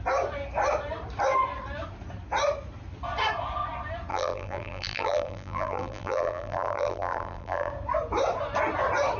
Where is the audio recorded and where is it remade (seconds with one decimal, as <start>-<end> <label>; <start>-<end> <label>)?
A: 0.0-4.1 recorded; 4.1-7.7 remade; 7.7-9.2 recorded